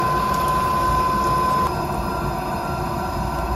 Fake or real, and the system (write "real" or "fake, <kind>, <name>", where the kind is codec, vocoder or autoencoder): real